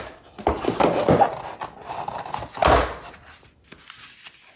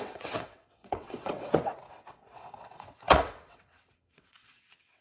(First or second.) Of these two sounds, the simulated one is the second